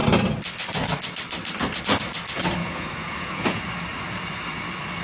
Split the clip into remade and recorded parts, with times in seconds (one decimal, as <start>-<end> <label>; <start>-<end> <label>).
0.0-2.6 recorded; 2.6-3.6 remade; 3.6-5.0 recorded